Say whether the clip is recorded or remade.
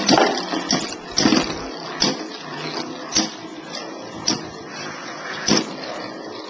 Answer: recorded